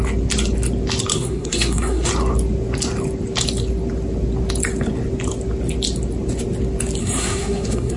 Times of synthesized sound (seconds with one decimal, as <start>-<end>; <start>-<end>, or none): 1.1-2.1; 7.0-8.0